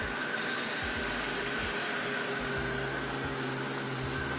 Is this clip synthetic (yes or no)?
no